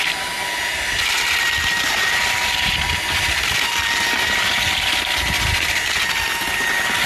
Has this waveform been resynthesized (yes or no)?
no